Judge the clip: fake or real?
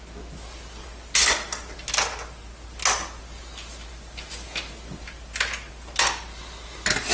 real